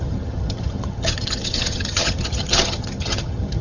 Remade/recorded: remade